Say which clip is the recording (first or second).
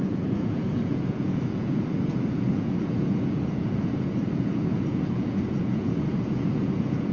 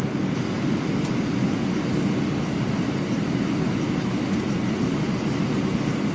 second